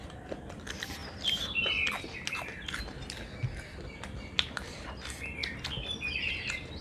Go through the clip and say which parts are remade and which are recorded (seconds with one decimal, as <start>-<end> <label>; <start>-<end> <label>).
0.0-1.0 recorded; 1.0-4.9 remade; 4.9-5.4 recorded; 5.4-6.2 remade; 6.2-6.8 recorded